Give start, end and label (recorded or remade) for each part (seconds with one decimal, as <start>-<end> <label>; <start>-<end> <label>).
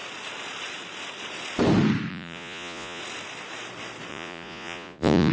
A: 0.0-2.1 recorded; 2.1-3.0 remade; 3.0-4.1 recorded; 4.1-5.3 remade